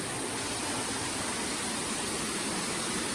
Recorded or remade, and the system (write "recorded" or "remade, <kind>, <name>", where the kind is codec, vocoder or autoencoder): recorded